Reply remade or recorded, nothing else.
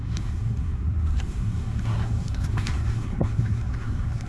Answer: remade